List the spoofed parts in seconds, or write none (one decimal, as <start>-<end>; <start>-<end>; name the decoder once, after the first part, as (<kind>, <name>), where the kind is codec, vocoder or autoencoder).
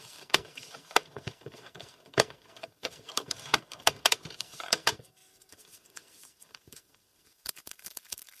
0.0-8.4 (codec, SNAC)